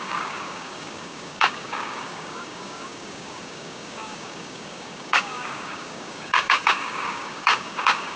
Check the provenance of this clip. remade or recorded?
remade